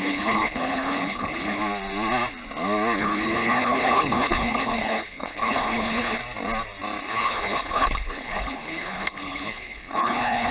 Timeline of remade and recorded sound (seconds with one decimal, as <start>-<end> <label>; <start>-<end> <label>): 0.0-1.6 remade; 1.6-3.0 recorded; 3.0-6.2 remade; 6.2-7.0 recorded; 7.0-10.5 remade